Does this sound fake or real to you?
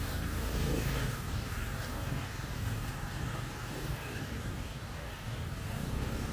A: fake